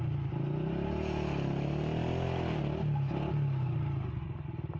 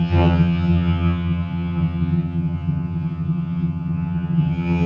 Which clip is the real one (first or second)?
first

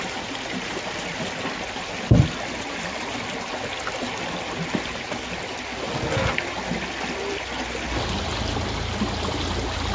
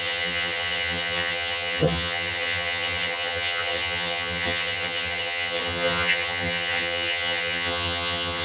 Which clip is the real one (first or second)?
first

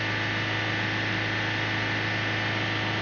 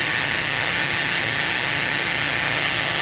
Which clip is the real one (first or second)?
first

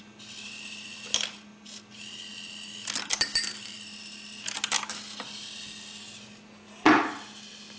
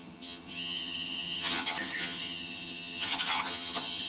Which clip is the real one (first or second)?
first